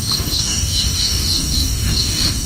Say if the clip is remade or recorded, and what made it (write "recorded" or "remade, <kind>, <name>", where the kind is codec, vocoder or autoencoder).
remade, codec, DAC